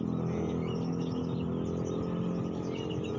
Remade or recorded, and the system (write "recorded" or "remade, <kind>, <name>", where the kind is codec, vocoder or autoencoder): recorded